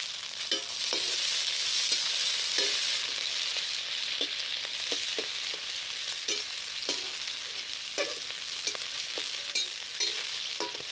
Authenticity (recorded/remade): recorded